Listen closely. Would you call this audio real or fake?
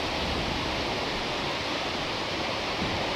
fake